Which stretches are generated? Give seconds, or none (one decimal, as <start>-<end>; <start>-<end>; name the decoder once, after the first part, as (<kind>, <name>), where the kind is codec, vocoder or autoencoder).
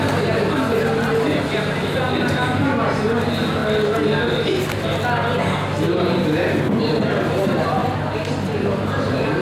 none